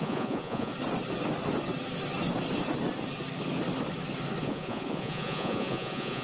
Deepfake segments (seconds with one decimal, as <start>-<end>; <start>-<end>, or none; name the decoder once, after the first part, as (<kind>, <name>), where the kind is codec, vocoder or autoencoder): 0.0-0.7 (vocoder, Vocos); 4.4-6.2